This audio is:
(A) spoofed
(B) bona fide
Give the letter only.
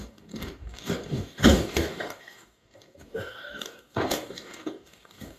A